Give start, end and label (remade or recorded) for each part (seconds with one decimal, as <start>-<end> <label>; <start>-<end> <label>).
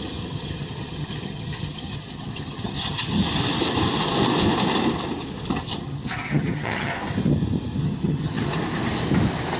0.0-3.2 remade; 3.2-5.5 recorded; 5.5-6.9 remade; 6.9-7.8 recorded; 7.8-8.5 remade; 8.5-9.6 recorded